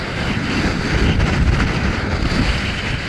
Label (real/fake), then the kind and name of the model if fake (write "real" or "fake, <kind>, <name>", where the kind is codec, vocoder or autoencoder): real